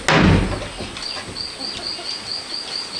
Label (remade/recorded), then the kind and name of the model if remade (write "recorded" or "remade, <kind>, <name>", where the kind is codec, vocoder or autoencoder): recorded